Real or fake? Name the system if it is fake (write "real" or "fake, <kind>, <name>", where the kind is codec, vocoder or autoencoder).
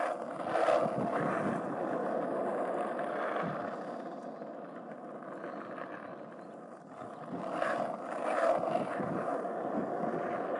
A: real